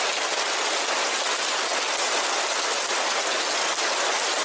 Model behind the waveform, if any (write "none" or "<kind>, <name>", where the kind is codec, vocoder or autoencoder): none